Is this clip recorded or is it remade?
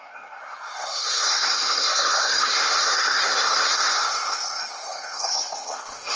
remade